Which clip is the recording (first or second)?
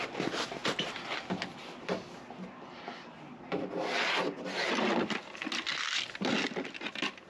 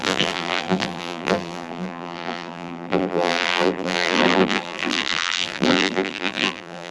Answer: first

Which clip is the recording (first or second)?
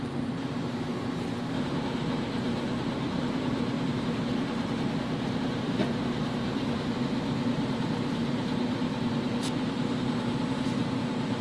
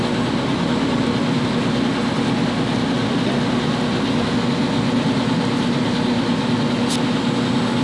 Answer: second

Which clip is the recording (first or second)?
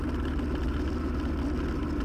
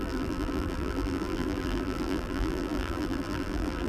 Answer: first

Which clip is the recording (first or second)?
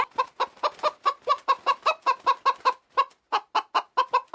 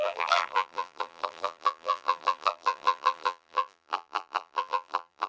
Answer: first